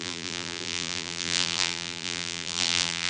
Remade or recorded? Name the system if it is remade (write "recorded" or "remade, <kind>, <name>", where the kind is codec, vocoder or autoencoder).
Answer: remade, vocoder, BigVGAN v2